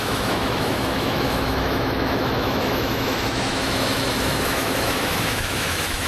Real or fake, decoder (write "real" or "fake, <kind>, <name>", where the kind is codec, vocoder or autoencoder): fake, autoencoder, DAC-VAE